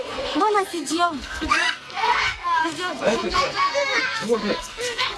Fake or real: fake